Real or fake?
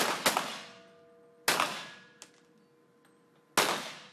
real